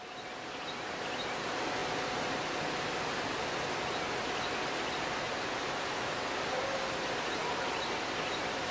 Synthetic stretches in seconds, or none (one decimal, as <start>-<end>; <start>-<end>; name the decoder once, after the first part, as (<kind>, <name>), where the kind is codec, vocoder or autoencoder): none